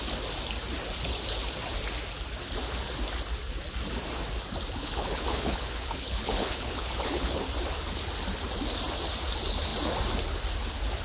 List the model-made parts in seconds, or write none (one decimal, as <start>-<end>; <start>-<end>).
4.8-7.4